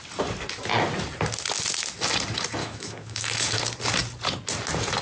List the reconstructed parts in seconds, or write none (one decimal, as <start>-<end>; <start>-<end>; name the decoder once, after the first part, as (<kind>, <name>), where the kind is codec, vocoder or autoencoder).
2.6-3.6 (autoencoder, DAC-VAE)